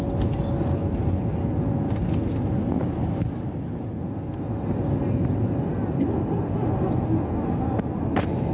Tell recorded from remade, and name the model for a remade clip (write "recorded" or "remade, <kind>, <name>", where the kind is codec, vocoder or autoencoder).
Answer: recorded